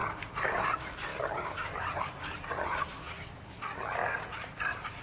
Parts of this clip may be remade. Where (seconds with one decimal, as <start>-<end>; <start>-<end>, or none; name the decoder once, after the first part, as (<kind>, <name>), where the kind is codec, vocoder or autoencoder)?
1.1-2.0 (vocoder, BigVGAN v2)

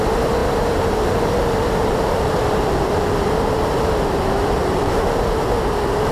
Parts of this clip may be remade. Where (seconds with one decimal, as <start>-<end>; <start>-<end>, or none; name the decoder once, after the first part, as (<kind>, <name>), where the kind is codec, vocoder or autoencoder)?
4.6-5.3 (vocoder, BigVGAN v2)

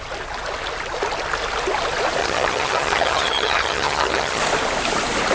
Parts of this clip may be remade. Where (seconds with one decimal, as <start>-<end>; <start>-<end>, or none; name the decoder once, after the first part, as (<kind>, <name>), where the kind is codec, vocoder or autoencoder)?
2.2-4.4 (vocoder, HiFi-GAN)

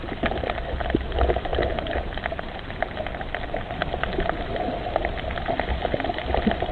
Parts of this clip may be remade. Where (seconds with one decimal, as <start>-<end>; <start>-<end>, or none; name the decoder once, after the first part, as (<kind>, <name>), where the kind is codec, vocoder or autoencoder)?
1.5-3.3 (vocoder, BigVGAN v2)

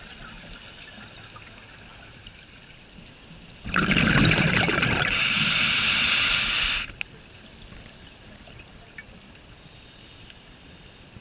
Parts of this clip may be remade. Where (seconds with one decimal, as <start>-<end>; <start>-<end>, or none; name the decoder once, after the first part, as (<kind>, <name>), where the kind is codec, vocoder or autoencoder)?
none

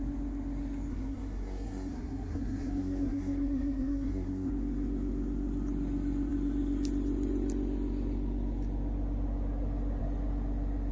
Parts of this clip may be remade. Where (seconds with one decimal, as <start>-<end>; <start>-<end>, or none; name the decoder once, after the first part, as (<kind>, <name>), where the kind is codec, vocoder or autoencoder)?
0.9-4.5 (codec, SNAC)

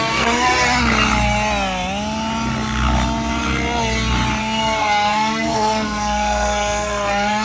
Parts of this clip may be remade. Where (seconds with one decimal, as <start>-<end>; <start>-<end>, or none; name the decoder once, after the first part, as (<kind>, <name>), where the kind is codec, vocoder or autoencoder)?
0.0-0.5 (codec, SNAC); 4.4-7.4

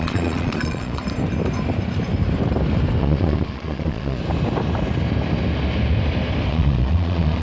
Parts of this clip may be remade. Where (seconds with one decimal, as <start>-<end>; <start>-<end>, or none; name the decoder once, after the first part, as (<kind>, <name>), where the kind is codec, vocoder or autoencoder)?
0.0-1.0 (vocoder, Vocos); 3.0-4.2; 6.5-7.4